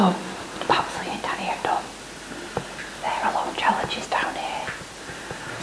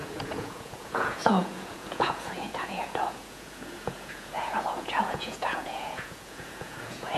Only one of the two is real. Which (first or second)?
first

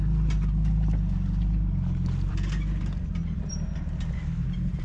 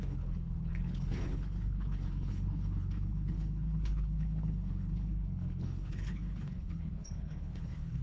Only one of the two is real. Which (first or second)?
first